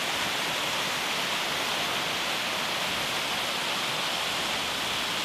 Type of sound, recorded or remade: recorded